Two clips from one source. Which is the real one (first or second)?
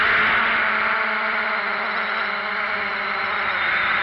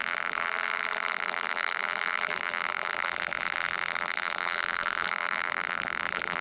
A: first